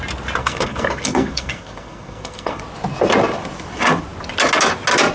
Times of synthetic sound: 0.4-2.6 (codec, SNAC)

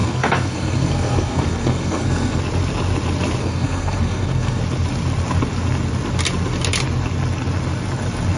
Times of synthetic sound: 0.0-2.4 (codec, SNAC); 3.4-4.6